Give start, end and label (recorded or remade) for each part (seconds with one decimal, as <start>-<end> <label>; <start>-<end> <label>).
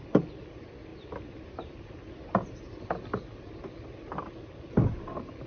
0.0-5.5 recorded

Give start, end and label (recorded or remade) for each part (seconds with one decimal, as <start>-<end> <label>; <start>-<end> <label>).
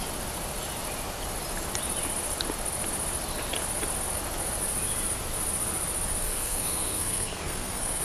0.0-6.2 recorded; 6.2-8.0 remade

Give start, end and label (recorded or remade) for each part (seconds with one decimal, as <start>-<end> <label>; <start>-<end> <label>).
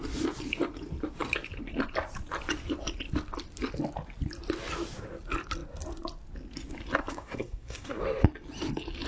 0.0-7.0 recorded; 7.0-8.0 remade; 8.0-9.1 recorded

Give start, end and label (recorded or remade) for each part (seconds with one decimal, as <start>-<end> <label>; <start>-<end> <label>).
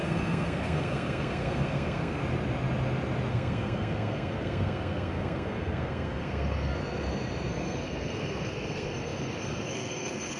0.0-2.2 remade; 2.2-3.3 recorded; 3.3-6.8 remade; 6.8-7.5 recorded; 7.5-10.4 remade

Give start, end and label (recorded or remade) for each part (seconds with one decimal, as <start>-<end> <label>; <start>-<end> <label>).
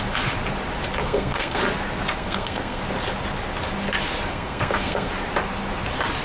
0.0-1.0 recorded; 1.0-1.6 remade; 1.6-2.2 recorded; 2.2-2.8 remade; 2.8-4.3 recorded; 4.3-5.1 remade; 5.1-6.2 recorded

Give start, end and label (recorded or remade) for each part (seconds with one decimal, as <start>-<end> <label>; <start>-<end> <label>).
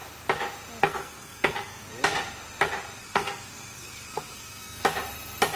0.0-0.8 recorded; 0.8-1.9 remade; 1.9-3.0 recorded; 3.0-4.8 remade; 4.8-5.6 recorded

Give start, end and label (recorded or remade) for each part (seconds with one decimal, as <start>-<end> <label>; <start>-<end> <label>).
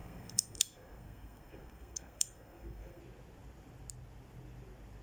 0.0-3.0 remade; 3.0-5.0 recorded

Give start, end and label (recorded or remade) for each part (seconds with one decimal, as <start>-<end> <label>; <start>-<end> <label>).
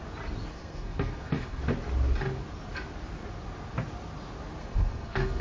0.0-0.5 recorded; 0.5-1.6 remade; 1.6-4.6 recorded; 4.6-5.4 remade